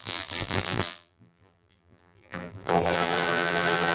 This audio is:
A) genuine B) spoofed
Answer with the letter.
B